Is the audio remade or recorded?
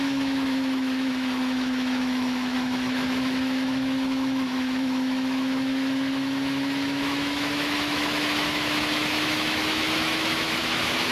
remade